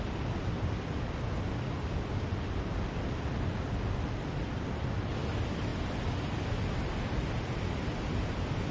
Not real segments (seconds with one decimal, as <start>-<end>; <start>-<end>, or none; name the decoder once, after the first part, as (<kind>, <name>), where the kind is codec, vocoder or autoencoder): none